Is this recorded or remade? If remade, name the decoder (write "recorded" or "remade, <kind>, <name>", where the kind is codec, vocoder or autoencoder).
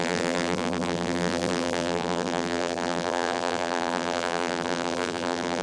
remade, vocoder, BigVGAN v2